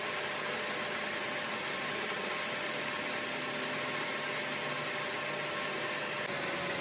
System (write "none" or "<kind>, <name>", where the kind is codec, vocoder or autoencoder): none